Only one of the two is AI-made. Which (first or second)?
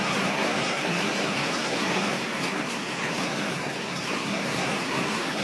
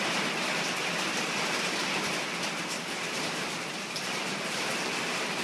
first